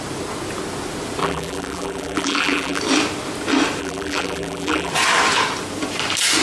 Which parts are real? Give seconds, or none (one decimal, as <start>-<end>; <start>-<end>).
0.0-1.2; 2.8-3.8; 4.9-6.4

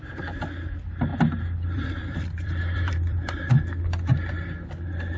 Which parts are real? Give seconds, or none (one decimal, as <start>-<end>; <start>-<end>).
0.0-1.1; 3.4-5.2

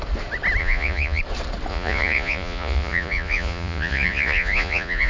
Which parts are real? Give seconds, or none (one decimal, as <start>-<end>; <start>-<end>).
0.0-0.6; 1.2-1.7

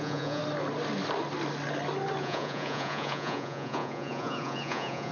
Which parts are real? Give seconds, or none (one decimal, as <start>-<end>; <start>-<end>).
0.4-2.2

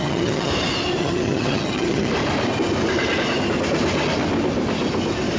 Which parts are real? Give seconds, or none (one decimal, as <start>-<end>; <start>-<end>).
0.5-1.0; 2.1-5.4

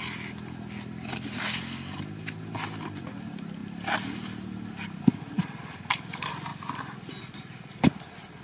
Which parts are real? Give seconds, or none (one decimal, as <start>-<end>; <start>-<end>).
0.0-8.4